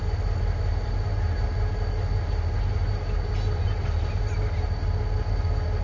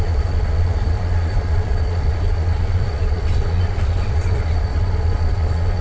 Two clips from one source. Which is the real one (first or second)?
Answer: first